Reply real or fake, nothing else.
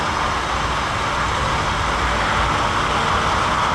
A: real